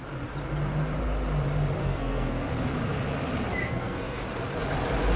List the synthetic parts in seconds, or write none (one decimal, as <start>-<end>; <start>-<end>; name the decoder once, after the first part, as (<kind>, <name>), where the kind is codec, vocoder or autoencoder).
1.8-2.5 (codec, SNAC); 3.6-4.2

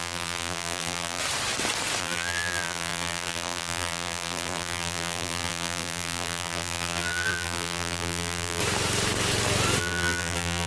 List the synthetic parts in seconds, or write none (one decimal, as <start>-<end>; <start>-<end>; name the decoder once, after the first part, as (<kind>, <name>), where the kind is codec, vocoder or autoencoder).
0.0-1.2 (vocoder, BigVGAN v2); 2.0-8.6; 9.8-10.7

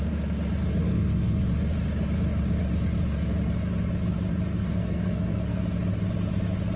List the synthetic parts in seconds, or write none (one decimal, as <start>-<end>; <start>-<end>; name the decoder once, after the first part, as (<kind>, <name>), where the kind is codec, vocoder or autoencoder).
0.8-1.4 (codec, SNAC); 4.6-5.6

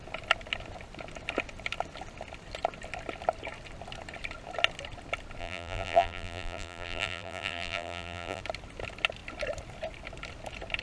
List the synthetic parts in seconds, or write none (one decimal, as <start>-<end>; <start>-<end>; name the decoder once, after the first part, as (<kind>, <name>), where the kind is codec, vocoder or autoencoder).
5.4-8.4 (vocoder, BigVGAN v2)

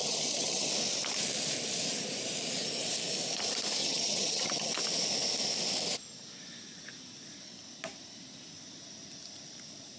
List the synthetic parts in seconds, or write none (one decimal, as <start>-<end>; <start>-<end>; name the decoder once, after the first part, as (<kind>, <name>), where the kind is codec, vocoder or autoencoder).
0.0-0.7 (vocoder, HiFi-GAN); 3.8-4.7

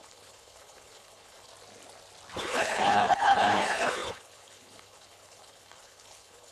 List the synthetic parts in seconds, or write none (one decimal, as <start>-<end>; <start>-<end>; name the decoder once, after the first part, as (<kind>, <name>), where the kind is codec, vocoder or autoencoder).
0.0-1.5 (codec, HILCodec); 2.4-6.5

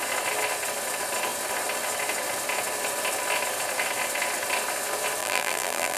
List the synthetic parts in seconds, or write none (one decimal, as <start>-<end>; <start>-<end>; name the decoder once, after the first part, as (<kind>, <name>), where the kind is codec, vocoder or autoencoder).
5.2-6.0 (vocoder, BigVGAN v2)

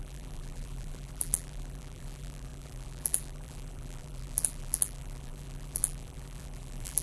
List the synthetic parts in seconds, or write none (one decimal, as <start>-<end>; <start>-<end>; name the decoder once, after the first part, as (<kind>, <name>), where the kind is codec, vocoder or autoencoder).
0.0-7.0 (vocoder, BigVGAN v2)